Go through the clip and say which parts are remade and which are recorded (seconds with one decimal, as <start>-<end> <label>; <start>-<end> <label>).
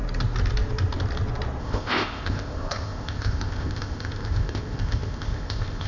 0.0-1.6 recorded; 1.6-5.9 remade